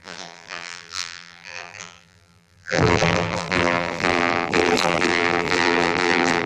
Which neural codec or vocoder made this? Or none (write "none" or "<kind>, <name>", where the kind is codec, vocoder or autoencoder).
vocoder, BigVGAN v2